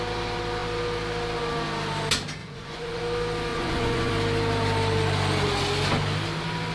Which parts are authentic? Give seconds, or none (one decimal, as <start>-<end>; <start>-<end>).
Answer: 0.0-2.4; 3.0-3.5; 4.1-6.7